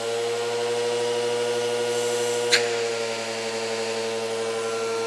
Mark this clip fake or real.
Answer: real